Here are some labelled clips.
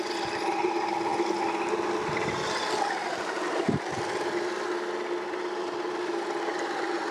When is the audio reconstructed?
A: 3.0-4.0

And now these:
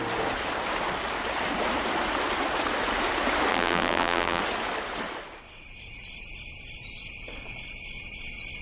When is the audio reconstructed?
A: 3.5-4.4

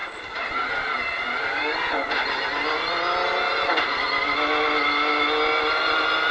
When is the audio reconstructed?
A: 0.0-1.6

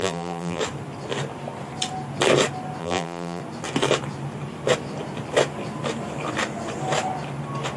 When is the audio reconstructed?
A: 0.0-0.6; 2.8-3.4

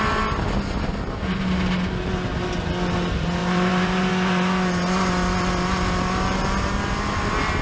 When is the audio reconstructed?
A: 3.4-4.1

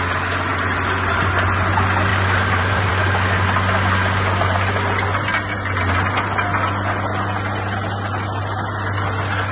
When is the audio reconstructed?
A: 2.1-2.9

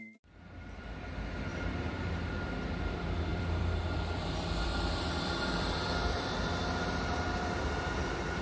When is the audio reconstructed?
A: 1.5-2.1; 3.3-7.2

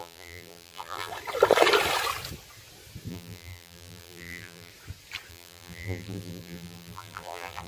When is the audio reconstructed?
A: 0.0-1.1; 3.1-4.7; 5.3-7.7